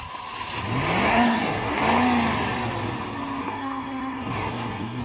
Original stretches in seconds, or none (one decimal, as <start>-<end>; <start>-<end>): 0.0-1.1; 1.8-3.4